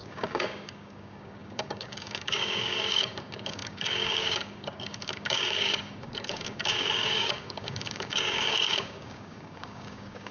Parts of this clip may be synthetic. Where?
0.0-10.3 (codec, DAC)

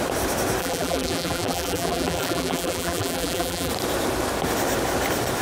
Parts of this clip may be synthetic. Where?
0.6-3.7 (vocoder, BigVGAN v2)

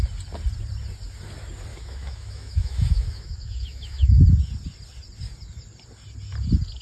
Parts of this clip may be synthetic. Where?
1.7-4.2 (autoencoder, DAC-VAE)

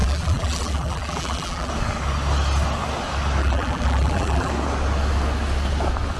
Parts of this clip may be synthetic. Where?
0.0-1.7 (vocoder, BigVGAN v2); 3.4-4.5

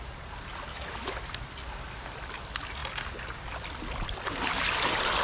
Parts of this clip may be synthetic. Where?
0.7-1.2 (autoencoder, DAC-VAE)

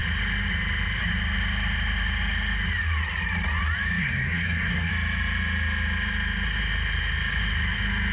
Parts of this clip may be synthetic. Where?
4.0-4.9 (codec, SNAC)

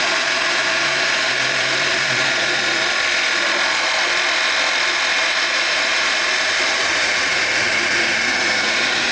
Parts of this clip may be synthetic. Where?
0.0-2.8 (vocoder, Vocos); 4.9-9.1

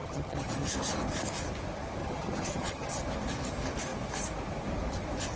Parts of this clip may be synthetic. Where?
0.0-0.7 (vocoder, HiFi-GAN); 2.0-3.0